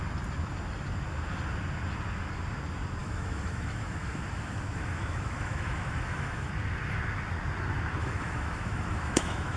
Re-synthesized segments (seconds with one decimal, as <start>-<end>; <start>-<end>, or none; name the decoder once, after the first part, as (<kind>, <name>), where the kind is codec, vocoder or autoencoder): 3.0-6.5 (autoencoder, DAC-VAE); 8.0-9.6